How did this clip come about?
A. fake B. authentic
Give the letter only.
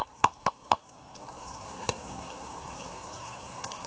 A